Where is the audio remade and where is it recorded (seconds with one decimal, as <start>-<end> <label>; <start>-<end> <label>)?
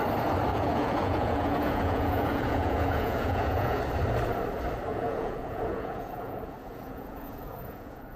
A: 0.0-0.5 recorded; 0.5-3.8 remade; 3.8-4.9 recorded; 4.9-8.2 remade